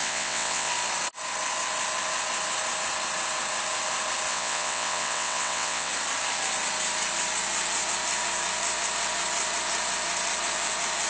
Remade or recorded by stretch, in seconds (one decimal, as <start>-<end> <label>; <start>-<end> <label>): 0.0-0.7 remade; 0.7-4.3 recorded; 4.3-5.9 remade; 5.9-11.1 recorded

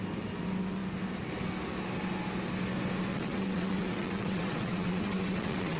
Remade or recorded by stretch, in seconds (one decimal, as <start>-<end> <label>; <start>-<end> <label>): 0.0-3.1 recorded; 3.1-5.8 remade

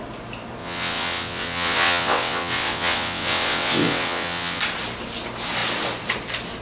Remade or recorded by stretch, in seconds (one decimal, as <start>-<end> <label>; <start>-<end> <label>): 0.0-0.6 recorded; 0.6-4.6 remade; 4.6-6.6 recorded

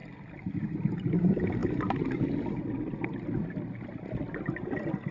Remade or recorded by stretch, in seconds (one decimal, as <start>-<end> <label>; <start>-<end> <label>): 0.0-5.1 recorded

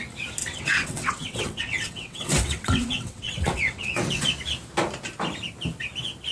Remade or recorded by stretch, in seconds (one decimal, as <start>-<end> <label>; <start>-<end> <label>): 0.0-0.4 recorded; 0.4-4.2 remade; 4.2-6.3 recorded

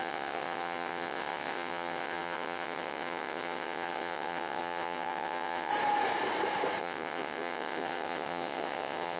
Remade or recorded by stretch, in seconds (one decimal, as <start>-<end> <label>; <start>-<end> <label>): 0.0-5.7 remade; 5.7-6.8 recorded; 6.8-9.2 remade

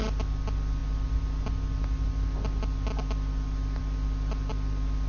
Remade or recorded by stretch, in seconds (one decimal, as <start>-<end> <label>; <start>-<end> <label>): 0.0-5.1 recorded

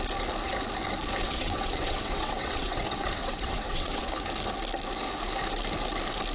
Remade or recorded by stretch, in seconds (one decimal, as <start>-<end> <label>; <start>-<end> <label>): 0.0-1.2 recorded; 1.2-4.1 remade; 4.1-6.3 recorded